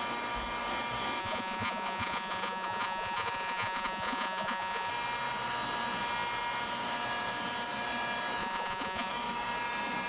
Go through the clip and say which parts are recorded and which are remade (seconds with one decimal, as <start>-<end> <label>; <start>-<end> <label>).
0.0-1.2 recorded; 1.2-4.9 remade; 4.9-8.4 recorded; 8.4-9.1 remade; 9.1-10.1 recorded